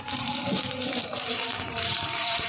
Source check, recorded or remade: remade